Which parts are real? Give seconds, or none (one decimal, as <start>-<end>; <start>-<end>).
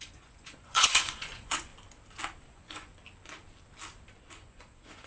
1.7-2.5; 2.9-4.3